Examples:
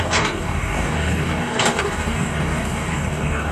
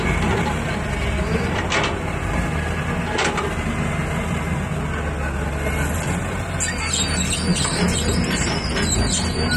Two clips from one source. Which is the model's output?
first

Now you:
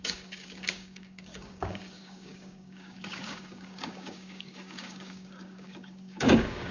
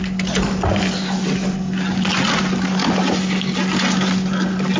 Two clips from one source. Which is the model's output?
first